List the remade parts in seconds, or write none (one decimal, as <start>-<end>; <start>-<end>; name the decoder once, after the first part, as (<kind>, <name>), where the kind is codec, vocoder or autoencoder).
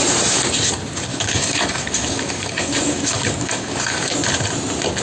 1.1-4.1 (codec, DAC)